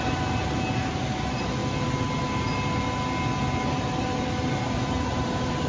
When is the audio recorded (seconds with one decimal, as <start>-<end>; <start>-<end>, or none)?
1.6-3.7